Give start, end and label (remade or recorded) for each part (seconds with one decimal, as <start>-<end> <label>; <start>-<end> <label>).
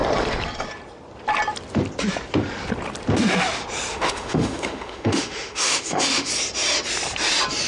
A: 0.0-3.9 recorded; 3.9-6.3 remade; 6.3-7.7 recorded